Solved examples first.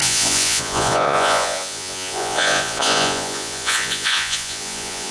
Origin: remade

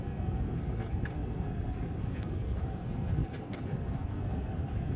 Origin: remade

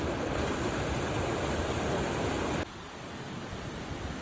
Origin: recorded